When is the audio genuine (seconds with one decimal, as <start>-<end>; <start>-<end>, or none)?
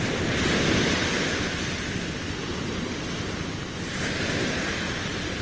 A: 0.0-5.4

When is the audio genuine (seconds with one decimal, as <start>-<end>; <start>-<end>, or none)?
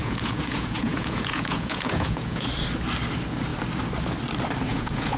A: 2.5-4.7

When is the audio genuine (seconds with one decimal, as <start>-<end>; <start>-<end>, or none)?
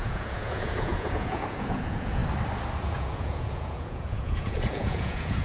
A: 2.2-2.9